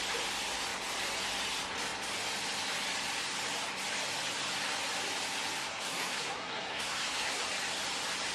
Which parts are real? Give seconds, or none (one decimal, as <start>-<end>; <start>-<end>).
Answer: 0.0-5.6; 7.4-8.3

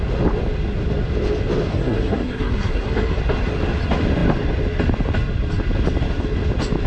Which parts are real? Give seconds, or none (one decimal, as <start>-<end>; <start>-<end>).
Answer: 0.0-1.7; 3.2-6.9

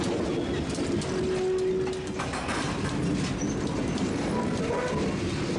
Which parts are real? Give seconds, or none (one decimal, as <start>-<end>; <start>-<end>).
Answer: 0.0-5.6

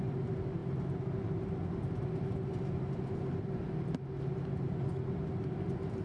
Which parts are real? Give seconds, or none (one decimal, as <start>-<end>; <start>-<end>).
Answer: 0.0-6.0